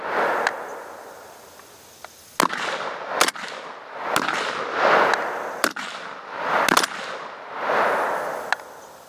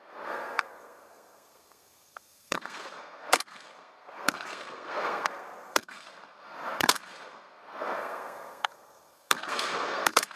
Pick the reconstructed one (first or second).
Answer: second